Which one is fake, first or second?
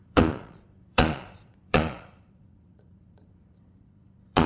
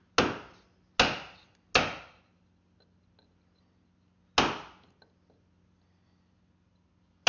first